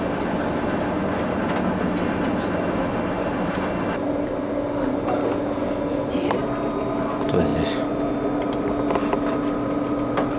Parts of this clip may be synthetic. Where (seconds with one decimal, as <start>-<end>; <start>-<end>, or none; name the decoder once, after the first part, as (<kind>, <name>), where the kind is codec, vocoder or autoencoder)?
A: none